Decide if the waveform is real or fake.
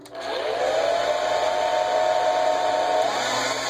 real